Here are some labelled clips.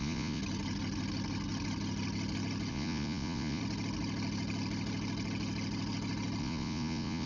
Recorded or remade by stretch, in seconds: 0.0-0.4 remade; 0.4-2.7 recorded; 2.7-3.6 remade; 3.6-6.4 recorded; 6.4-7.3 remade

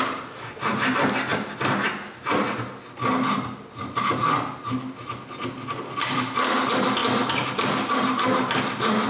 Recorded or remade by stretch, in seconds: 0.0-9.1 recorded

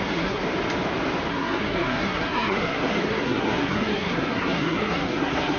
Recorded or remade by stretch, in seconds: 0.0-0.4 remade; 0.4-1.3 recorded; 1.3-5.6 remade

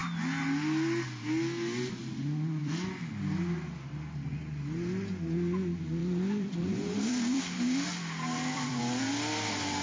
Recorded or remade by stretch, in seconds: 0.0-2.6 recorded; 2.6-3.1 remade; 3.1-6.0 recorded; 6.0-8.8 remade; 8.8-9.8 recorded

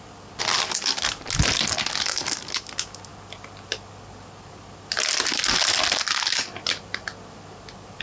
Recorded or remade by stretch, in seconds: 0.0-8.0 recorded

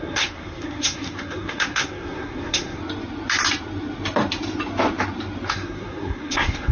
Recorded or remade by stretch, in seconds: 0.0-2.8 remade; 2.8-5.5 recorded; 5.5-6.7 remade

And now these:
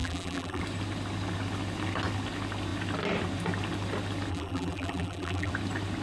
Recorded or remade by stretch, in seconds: 0.0-0.6 remade; 0.6-4.3 recorded; 4.3-5.5 remade; 5.5-6.0 recorded

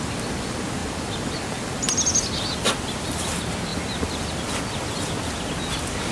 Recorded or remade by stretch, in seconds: 0.0-0.8 recorded; 0.8-1.6 remade; 1.6-3.7 recorded; 3.7-4.6 remade; 4.6-6.1 recorded